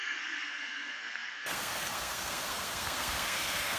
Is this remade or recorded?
remade